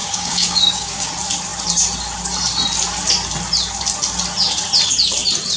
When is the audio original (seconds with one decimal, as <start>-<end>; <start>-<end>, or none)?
1.1-5.6